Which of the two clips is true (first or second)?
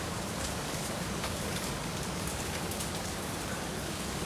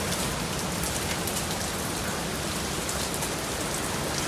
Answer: second